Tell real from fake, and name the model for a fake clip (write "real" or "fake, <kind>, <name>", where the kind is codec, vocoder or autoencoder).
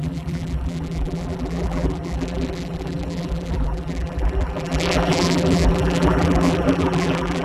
fake, vocoder, BigVGAN v2